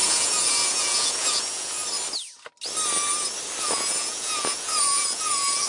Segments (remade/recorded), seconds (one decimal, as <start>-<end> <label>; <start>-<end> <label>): 0.0-1.8 remade; 1.8-3.6 recorded; 3.6-5.7 remade